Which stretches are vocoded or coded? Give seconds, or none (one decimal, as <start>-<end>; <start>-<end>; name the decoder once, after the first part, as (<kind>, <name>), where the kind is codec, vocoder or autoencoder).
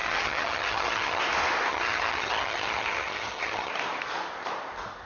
0.0-1.2 (vocoder, HiFi-GAN); 1.7-3.7